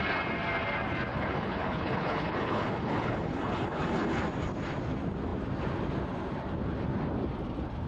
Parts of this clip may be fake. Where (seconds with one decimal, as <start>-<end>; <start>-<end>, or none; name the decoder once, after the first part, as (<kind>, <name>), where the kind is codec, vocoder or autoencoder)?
1.1-4.2 (codec, HILCodec)